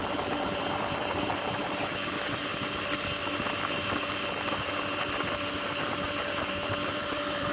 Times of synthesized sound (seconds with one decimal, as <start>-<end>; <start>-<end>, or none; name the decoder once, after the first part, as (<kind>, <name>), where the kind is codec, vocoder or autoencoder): 0.0-2.5 (vocoder, BigVGAN v2); 6.9-7.5